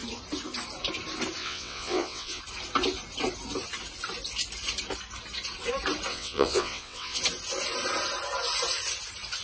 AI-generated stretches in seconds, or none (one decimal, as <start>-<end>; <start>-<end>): 1.4-2.4; 6.1-7.2